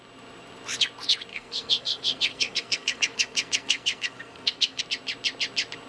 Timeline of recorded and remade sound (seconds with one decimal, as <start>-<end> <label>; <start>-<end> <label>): 0.0-1.3 recorded; 1.3-4.8 remade; 4.8-5.9 recorded